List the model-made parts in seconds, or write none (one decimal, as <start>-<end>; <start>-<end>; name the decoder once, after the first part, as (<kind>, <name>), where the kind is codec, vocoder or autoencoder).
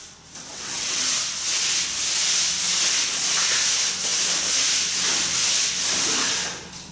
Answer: 0.5-1.1 (vocoder, WaveNeXt)